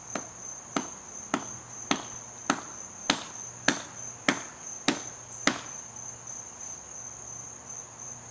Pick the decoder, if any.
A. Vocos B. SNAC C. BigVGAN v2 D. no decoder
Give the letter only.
D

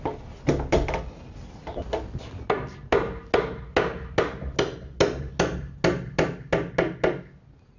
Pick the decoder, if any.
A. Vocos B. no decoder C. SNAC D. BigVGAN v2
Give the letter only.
B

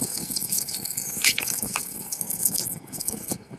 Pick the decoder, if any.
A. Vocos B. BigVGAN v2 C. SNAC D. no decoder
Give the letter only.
C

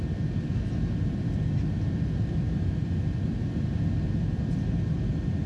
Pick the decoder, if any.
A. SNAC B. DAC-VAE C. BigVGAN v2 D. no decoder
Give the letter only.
D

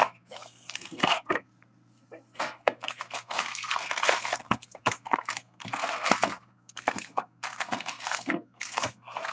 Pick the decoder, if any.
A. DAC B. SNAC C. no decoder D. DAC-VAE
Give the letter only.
B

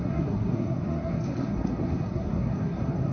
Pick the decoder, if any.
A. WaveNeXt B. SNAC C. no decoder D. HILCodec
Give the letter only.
B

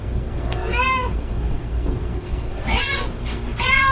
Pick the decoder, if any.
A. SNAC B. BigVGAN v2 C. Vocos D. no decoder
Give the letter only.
A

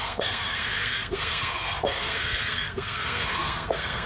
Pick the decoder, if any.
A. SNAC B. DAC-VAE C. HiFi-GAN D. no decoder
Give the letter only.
A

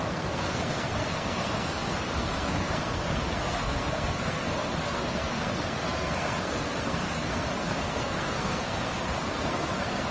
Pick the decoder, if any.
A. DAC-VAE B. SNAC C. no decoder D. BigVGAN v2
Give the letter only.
B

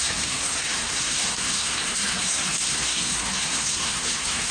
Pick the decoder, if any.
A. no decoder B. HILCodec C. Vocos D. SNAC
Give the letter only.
D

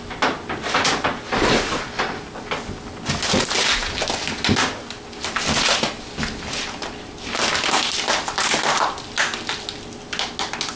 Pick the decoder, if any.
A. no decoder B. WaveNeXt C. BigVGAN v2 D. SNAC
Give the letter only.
A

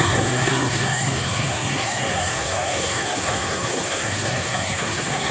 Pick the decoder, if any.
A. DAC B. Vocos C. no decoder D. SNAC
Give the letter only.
D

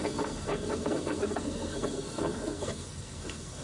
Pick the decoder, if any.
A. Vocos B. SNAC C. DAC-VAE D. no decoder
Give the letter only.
B